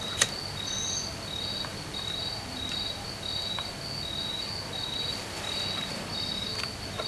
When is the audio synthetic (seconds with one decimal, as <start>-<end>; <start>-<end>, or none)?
none